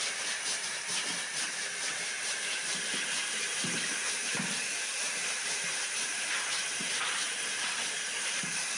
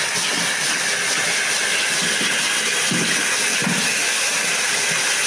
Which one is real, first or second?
second